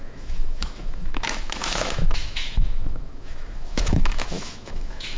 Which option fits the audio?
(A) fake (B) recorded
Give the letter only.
A